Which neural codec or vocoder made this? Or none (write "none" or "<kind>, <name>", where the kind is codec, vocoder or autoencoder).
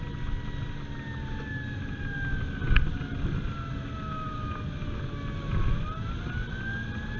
none